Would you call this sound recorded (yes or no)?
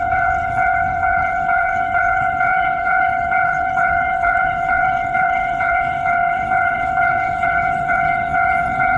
no